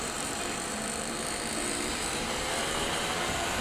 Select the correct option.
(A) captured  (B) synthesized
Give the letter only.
B